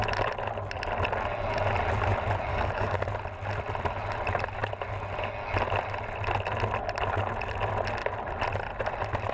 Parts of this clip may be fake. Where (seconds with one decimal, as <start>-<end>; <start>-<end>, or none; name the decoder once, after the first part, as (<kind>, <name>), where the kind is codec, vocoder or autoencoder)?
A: 2.5-3.0 (codec, DAC)